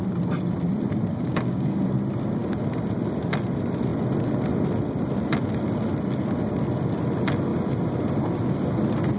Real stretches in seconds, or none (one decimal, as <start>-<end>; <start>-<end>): 0.0-1.1; 1.8-9.2